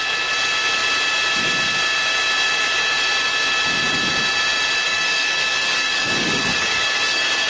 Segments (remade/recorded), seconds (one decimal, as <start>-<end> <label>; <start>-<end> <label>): 0.0-4.9 recorded; 4.9-7.5 remade